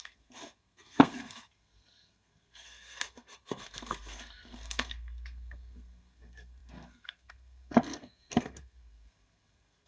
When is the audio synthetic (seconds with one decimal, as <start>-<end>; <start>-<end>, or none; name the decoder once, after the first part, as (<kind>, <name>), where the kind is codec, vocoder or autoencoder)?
0.0-9.9 (codec, SNAC)